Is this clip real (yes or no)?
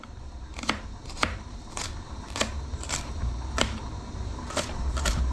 no